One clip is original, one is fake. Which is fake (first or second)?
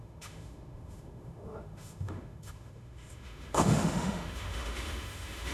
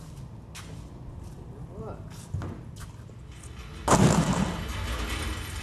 first